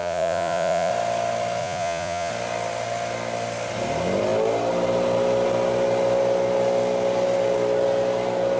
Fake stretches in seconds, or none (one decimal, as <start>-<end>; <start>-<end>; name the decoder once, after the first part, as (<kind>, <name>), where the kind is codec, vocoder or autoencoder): 0.0-0.9 (vocoder, Vocos); 1.6-2.3